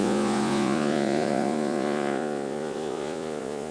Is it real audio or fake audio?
fake